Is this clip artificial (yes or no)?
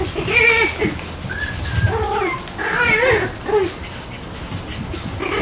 no